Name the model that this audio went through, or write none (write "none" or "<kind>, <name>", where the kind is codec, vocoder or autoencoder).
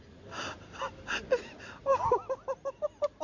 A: none